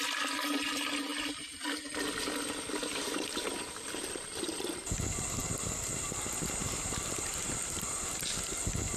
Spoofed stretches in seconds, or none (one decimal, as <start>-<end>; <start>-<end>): 1.1-1.8; 2.9-4.4; 6.6-7.1